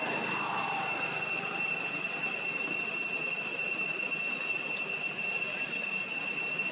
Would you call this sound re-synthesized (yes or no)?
no